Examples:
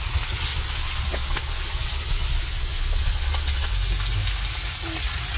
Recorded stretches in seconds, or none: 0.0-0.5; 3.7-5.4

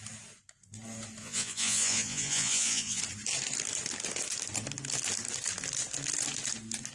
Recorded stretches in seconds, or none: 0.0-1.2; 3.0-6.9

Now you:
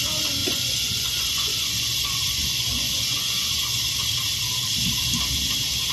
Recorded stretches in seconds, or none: 0.0-0.4; 3.9-5.9

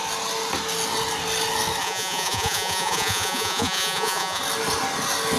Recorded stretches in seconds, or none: 0.0-1.8; 4.4-5.4

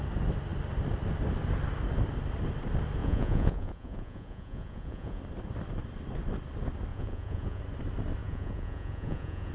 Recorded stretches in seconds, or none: 0.0-3.0; 5.2-6.9; 7.6-8.2

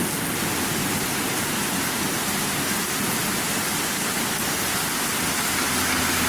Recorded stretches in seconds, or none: 0.0-6.3

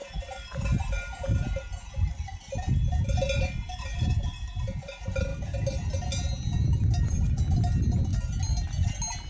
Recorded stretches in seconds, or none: 0.0-9.3

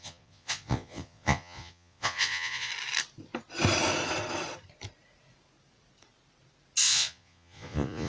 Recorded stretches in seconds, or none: 2.7-6.8